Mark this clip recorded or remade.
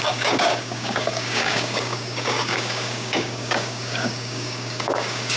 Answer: remade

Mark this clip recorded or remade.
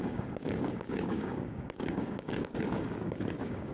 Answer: remade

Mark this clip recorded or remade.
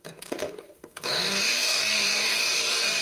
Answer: remade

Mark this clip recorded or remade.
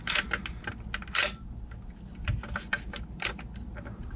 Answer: recorded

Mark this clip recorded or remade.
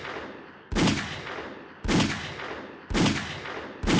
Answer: recorded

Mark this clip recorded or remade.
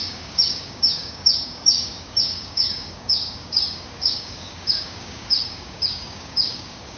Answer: remade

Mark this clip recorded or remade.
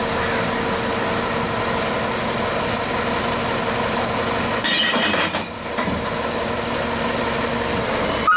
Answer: recorded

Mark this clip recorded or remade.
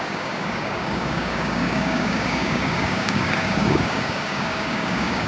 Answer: remade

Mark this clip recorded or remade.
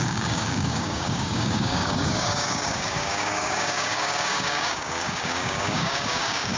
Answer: remade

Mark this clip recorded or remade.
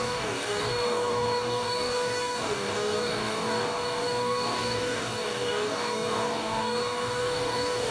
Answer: remade